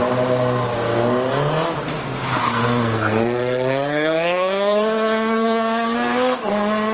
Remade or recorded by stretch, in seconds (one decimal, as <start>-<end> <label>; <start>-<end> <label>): 0.0-2.4 recorded; 2.4-6.5 remade; 6.5-6.9 recorded